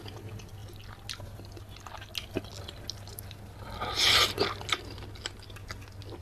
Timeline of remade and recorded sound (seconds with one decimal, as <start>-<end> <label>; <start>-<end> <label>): 0.0-6.2 recorded